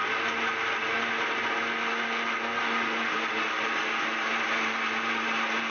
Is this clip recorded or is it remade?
recorded